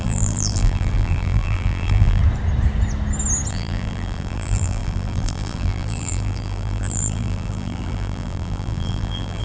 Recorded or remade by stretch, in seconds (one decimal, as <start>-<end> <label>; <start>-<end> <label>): 0.0-2.2 remade; 2.2-3.5 recorded; 3.5-9.4 remade